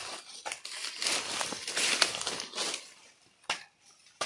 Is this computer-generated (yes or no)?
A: no